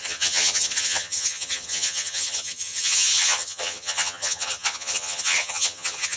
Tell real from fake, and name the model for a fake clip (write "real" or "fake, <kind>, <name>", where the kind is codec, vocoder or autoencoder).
fake, vocoder, HiFi-GAN